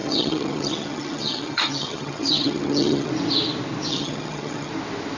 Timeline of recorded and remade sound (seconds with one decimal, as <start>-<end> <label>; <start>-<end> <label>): 0.0-3.1 remade; 3.1-3.9 recorded; 3.9-4.7 remade; 4.7-5.2 recorded

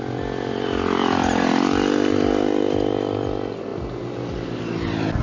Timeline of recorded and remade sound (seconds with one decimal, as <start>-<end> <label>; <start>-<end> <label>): 0.0-5.2 recorded

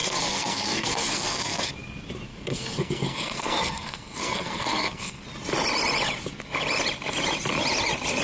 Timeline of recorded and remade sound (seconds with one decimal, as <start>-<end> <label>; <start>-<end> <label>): 0.0-1.7 remade; 1.7-2.3 recorded; 2.3-5.2 remade; 5.2-8.2 recorded

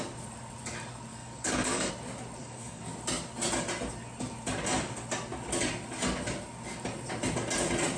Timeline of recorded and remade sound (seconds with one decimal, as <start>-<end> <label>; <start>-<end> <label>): 0.0-1.1 recorded; 1.1-1.9 remade; 1.9-2.4 recorded; 2.4-2.9 remade; 2.9-8.0 recorded

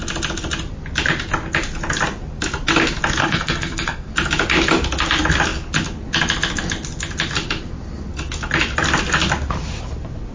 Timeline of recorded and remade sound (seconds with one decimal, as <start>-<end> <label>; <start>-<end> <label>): 0.0-3.2 recorded; 3.2-4.1 remade; 4.1-10.3 recorded